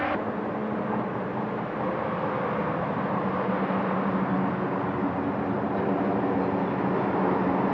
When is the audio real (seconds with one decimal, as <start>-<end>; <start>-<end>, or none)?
0.0-7.7

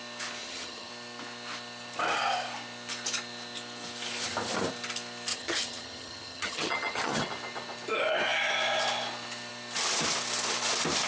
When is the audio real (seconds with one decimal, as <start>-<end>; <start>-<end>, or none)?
0.0-0.4; 0.9-5.3; 7.3-11.1

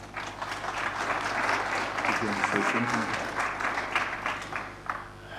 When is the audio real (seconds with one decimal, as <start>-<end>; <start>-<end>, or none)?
0.0-2.4; 3.1-5.4

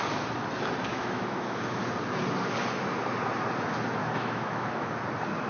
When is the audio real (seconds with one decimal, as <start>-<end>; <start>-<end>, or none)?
0.0-0.9; 1.8-4.0; 4.9-5.5

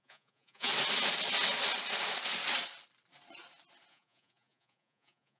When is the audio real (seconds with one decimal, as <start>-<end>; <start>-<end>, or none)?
0.7-3.9

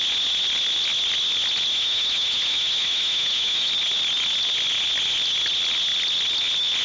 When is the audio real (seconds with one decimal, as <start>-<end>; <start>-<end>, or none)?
0.0-1.7; 3.7-6.8